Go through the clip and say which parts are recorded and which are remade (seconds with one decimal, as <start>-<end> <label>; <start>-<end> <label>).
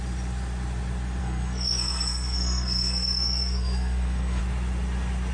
0.0-1.2 recorded; 1.2-4.4 remade; 4.4-5.3 recorded